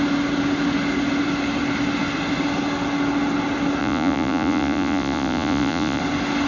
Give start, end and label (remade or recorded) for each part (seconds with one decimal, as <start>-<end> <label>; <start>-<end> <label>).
0.0-3.8 recorded; 3.8-6.0 remade; 6.0-6.5 recorded